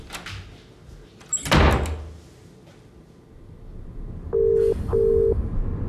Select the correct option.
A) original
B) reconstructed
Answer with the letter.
A